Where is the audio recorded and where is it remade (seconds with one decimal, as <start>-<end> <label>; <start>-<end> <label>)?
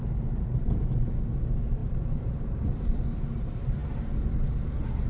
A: 0.0-1.8 recorded; 1.8-3.2 remade; 3.2-5.1 recorded